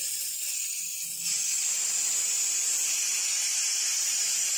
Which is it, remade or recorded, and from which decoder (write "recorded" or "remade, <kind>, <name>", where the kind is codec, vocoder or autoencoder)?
recorded